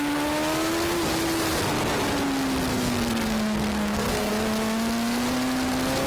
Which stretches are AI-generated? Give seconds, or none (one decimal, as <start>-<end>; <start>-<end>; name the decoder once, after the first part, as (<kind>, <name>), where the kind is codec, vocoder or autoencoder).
2.7-4.3 (codec, SNAC)